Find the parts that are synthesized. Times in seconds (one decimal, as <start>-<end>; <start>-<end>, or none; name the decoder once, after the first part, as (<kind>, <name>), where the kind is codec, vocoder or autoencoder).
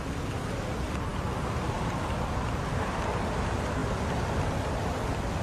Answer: none